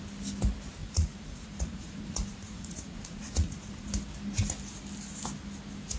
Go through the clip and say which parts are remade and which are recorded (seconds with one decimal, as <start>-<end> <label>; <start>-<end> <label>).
0.0-0.8 recorded; 0.8-3.9 remade; 3.9-6.0 recorded